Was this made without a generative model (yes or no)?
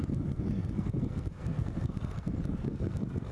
no